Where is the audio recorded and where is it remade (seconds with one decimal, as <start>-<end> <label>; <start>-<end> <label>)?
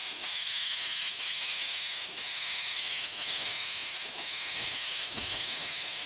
0.0-6.1 remade